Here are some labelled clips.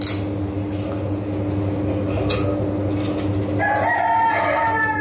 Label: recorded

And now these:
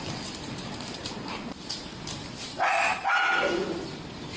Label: recorded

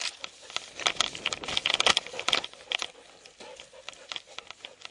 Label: recorded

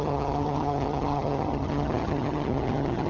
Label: remade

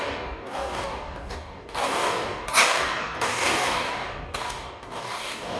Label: remade